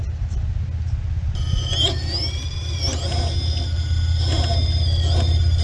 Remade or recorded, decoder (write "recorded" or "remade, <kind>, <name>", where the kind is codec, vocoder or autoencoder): recorded